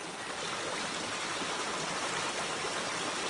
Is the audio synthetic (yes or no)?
no